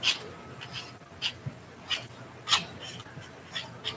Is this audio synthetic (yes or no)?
no